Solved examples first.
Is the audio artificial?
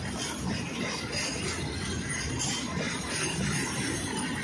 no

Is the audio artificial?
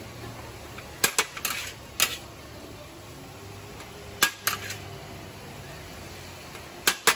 no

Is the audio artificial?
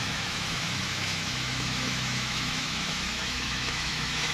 yes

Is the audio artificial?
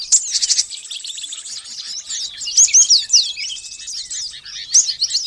no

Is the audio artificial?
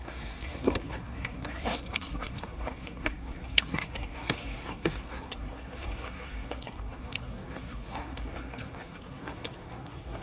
yes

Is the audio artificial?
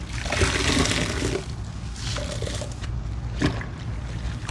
no